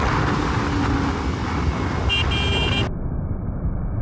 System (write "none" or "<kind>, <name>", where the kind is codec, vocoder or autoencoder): none